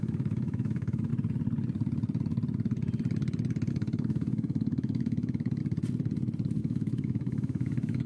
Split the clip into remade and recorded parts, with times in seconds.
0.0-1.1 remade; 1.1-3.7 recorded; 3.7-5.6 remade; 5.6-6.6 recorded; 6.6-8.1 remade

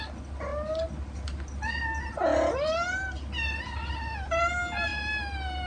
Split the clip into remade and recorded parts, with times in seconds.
0.0-5.7 recorded

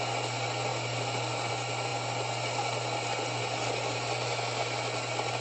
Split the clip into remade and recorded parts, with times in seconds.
0.0-5.4 recorded

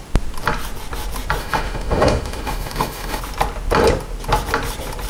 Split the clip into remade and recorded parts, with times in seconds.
0.0-1.4 recorded; 1.4-3.2 remade; 3.2-5.1 recorded

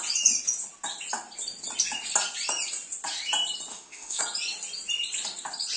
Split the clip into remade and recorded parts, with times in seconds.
0.0-3.7 recorded; 3.7-4.2 remade; 4.2-5.8 recorded

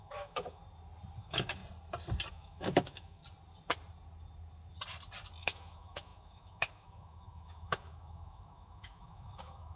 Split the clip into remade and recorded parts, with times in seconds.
0.0-0.6 remade; 0.6-1.2 recorded; 1.2-1.6 remade; 1.6-2.3 recorded; 2.3-3.2 remade; 3.2-5.4 recorded; 5.4-9.8 remade